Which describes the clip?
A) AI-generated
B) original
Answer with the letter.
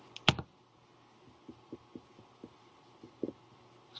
B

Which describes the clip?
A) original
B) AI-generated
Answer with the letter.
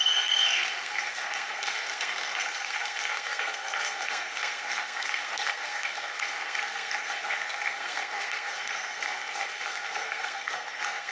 B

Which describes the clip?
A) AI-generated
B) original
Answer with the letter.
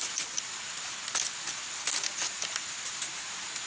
B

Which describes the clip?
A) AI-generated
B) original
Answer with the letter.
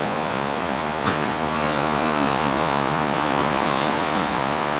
A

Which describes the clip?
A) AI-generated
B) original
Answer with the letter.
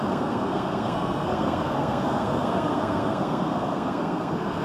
A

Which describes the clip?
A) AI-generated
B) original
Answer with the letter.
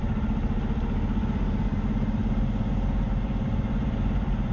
B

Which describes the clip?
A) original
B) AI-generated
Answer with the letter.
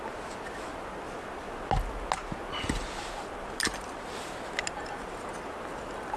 A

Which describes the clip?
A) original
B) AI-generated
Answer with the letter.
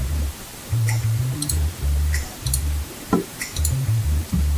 B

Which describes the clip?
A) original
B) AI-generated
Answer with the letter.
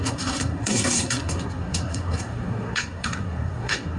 B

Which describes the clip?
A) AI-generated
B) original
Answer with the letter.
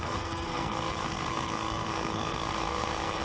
A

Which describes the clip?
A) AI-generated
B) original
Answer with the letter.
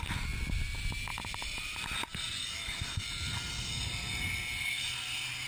B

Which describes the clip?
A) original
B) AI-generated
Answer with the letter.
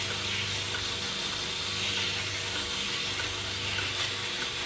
A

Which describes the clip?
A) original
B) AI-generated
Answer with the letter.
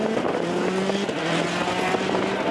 A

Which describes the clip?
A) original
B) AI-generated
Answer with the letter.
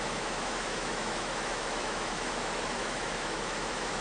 B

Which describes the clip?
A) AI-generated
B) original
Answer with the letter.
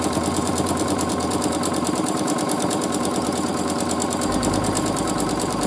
A